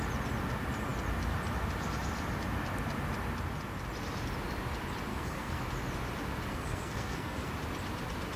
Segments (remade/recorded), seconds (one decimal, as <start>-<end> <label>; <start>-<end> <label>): 0.0-5.1 recorded; 5.1-5.6 remade; 5.6-6.5 recorded; 6.5-7.5 remade; 7.5-8.4 recorded